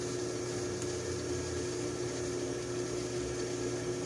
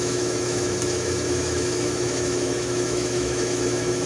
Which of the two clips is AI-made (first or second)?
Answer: second